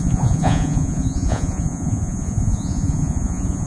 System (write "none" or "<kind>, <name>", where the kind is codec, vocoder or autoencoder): vocoder, Vocos